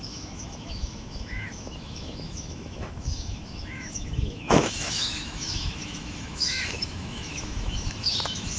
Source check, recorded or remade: remade